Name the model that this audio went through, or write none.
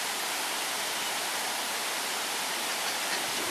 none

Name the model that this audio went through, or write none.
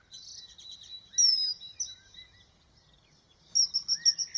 none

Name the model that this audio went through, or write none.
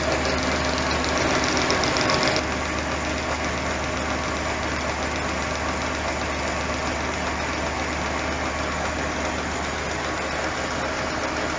none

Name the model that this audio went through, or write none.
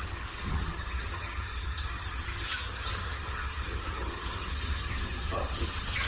vocoder, HiFi-GAN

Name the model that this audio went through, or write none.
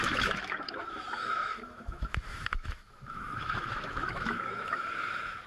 autoencoder, DAC-VAE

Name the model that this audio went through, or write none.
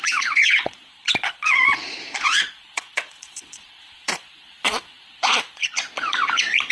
vocoder, Vocos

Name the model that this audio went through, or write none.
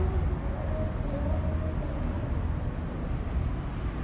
none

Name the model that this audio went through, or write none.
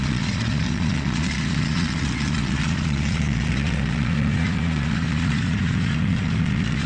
vocoder, Vocos